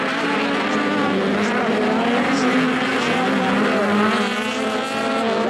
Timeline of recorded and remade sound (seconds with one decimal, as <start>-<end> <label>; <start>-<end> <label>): 0.0-5.5 recorded